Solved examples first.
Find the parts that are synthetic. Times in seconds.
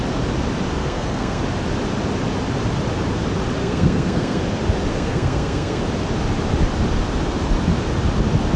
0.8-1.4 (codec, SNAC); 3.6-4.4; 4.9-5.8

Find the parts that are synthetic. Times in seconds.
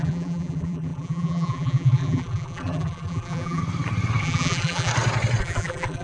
0.0-3.6 (vocoder, BigVGAN v2); 4.2-4.9; 5.4-6.0